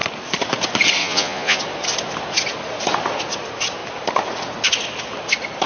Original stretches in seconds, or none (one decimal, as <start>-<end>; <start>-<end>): 0.0-1.0; 1.6-5.7